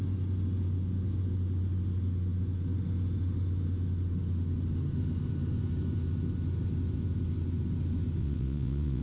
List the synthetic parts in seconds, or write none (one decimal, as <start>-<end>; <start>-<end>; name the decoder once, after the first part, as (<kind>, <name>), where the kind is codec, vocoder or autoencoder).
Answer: 8.2-9.0 (vocoder, WaveNeXt)